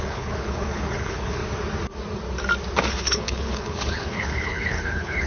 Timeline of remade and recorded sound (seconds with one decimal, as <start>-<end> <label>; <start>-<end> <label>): 0.0-1.4 remade; 1.4-2.9 recorded; 2.9-5.3 remade